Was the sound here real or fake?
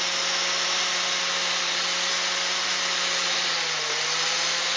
real